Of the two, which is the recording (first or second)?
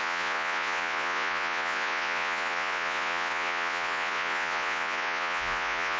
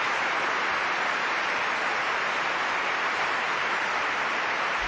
second